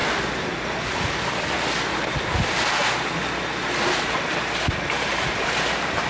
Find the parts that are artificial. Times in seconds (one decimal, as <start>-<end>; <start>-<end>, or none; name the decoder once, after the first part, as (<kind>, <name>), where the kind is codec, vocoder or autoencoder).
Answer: none